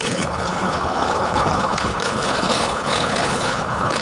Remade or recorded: remade